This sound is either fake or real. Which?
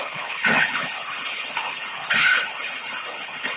fake